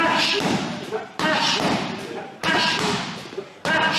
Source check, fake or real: fake